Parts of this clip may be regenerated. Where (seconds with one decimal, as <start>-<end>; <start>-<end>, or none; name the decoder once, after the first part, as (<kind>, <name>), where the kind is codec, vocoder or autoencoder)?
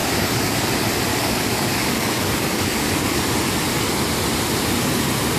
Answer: 0.0-0.7 (codec, DAC); 1.1-3.2